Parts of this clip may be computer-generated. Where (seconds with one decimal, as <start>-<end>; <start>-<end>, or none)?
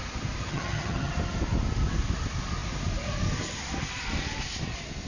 0.4-1.1